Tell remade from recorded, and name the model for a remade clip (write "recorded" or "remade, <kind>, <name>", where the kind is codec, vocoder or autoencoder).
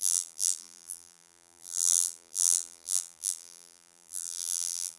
remade, vocoder, BigVGAN v2